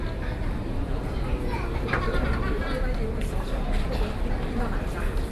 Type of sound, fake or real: real